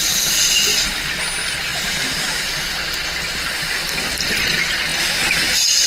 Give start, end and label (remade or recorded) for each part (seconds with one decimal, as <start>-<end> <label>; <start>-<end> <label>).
0.0-4.9 recorded; 4.9-5.5 remade; 5.5-5.9 recorded